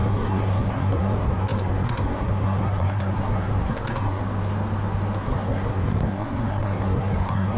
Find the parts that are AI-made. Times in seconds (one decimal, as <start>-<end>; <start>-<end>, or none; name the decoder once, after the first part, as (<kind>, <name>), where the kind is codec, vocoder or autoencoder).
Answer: 0.0-4.2 (codec, SNAC); 5.2-7.6